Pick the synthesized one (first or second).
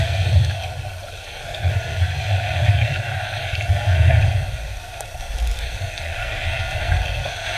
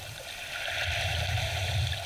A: first